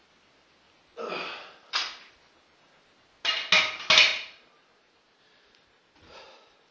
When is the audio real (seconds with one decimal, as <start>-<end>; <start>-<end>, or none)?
0.0-6.7

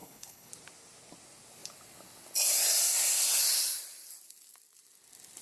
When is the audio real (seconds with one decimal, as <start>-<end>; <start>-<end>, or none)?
0.5-5.4

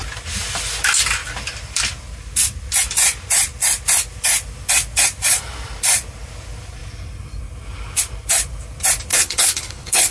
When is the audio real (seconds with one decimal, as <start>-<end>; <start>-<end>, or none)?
0.0-9.1

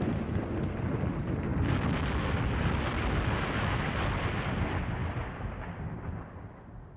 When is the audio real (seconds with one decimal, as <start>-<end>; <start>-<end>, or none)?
0.0-7.0